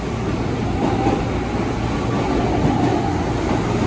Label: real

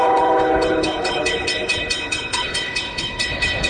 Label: fake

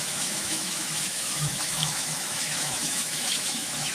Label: fake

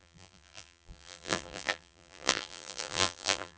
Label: fake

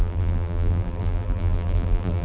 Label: fake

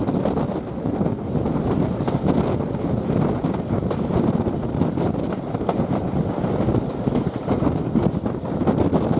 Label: real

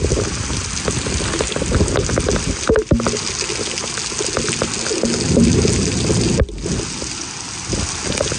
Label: real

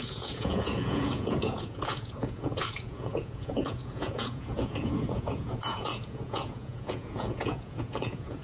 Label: fake